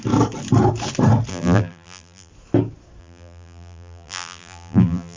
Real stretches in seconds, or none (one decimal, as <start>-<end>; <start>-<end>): 0.0-1.3; 2.3-3.0